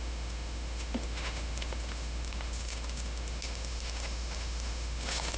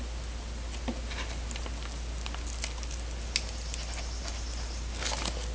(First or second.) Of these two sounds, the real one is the second